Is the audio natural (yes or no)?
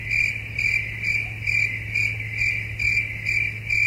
yes